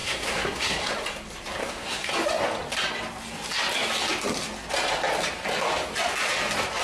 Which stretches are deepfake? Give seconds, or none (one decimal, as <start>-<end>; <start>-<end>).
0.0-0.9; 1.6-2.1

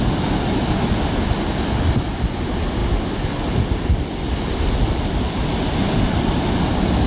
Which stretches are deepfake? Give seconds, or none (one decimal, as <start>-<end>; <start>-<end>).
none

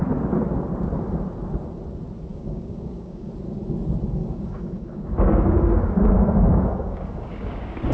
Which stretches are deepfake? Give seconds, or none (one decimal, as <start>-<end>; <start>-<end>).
2.3-3.3; 4.2-7.9

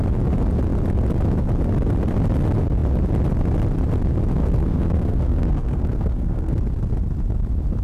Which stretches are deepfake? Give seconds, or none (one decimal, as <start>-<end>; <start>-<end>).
4.4-6.6

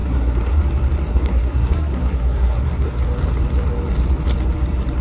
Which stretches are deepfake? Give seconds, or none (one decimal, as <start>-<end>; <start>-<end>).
0.0-0.6; 1.1-2.9

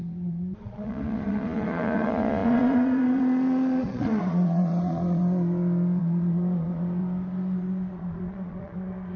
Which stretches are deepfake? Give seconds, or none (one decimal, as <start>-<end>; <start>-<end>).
0.0-5.2; 6.0-7.0; 7.9-9.2